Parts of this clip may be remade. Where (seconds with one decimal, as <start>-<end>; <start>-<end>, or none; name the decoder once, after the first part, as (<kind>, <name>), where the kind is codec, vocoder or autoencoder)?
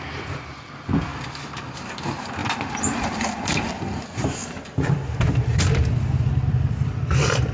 1.1-1.9 (vocoder, BigVGAN v2); 2.4-3.7; 4.4-7.5